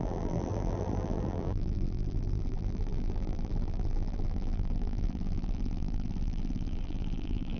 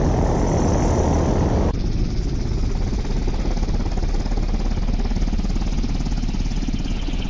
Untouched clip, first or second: second